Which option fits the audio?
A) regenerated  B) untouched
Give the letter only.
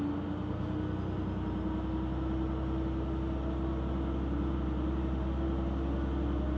B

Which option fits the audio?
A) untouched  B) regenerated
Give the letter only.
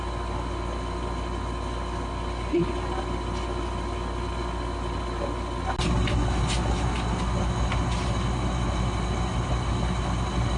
A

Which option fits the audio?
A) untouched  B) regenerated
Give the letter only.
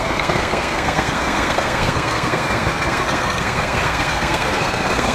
B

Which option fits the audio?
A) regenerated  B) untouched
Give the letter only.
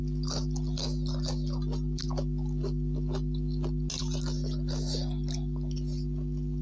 B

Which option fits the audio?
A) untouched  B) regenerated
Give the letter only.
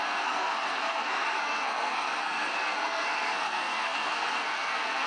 B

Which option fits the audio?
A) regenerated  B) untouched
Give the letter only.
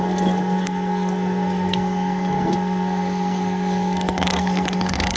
A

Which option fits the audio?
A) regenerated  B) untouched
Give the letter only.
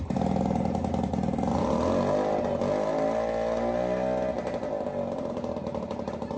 B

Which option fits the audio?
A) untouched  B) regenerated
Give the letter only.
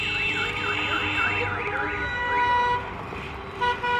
A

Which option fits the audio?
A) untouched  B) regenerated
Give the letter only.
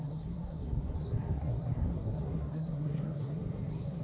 B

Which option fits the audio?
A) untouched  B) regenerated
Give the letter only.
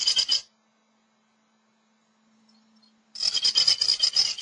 A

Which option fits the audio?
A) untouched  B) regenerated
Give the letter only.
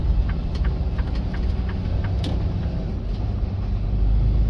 A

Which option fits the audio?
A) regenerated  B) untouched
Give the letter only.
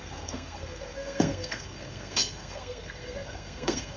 A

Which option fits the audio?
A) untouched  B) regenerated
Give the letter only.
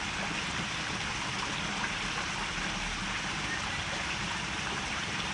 A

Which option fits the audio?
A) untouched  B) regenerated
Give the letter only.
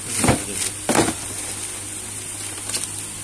A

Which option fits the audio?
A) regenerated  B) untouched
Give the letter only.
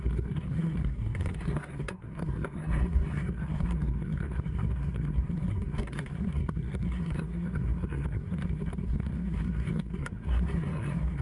A